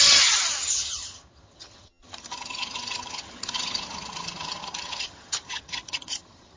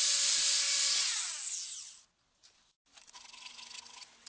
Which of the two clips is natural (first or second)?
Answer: second